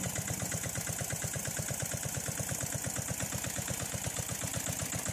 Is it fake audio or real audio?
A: real